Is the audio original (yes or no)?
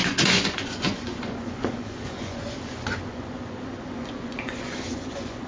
no